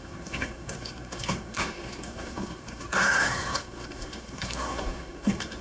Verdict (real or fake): fake